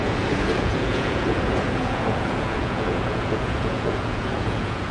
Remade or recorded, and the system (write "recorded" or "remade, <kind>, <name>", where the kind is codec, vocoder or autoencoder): remade, vocoder, Vocos